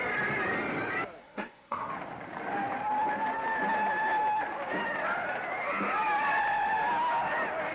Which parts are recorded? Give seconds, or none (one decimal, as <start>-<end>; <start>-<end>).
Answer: 0.0-1.2; 1.9-7.7